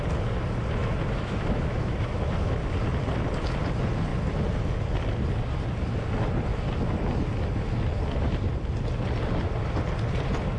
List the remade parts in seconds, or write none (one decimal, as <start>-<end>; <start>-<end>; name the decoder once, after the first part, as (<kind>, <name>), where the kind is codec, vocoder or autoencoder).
0.8-2.2 (autoencoder, DAC-VAE)

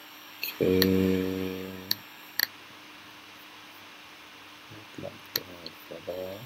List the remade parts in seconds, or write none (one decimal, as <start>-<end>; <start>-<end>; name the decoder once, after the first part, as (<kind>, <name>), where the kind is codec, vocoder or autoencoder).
0.0-2.4 (codec, DAC); 6.1-6.5

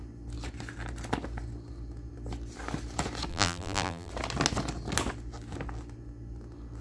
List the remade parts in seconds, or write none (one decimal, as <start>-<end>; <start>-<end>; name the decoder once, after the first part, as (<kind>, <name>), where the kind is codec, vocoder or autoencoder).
3.3-4.1 (vocoder, BigVGAN v2)

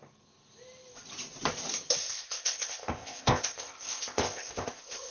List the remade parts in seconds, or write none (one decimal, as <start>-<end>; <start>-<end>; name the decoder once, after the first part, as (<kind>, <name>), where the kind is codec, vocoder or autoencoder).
2.0-5.1 (codec, ZipCodec)

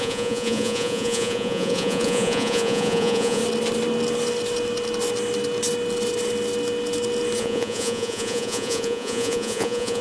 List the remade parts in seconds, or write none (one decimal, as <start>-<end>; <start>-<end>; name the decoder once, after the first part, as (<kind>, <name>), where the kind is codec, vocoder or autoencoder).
0.0-3.4 (vocoder, Vocos); 7.4-10.0

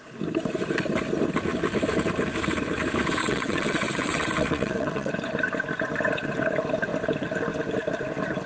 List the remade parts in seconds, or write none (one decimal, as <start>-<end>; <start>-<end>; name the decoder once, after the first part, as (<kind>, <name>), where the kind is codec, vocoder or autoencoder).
3.2-5.1 (vocoder, WaveNeXt)

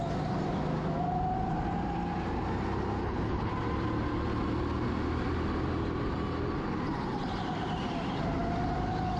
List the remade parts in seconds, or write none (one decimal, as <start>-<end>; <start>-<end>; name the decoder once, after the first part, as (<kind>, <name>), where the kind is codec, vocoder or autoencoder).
3.0-3.5 (codec, HILCodec)